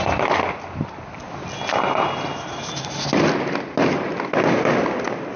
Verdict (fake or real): real